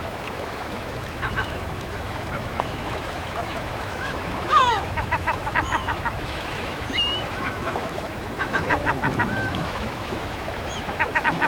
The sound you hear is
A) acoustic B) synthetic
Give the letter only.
B